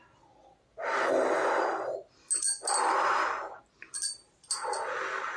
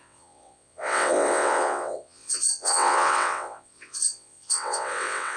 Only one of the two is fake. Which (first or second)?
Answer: second